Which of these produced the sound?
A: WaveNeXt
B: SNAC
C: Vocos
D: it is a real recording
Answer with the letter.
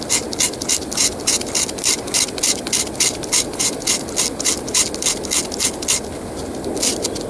D